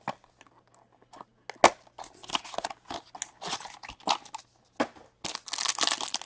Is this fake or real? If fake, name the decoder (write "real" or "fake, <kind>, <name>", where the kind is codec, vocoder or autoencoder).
real